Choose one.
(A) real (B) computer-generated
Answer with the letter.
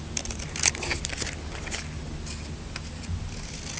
A